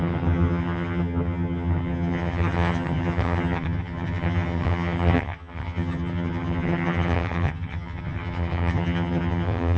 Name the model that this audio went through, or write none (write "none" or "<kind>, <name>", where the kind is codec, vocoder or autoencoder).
vocoder, HiFi-GAN